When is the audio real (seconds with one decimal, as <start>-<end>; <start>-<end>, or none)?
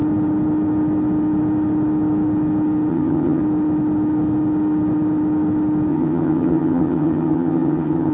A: 0.0-2.9; 3.4-5.9